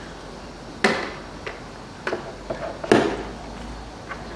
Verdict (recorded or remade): recorded